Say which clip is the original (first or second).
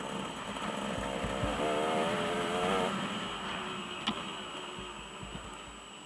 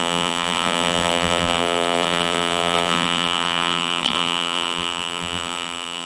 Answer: first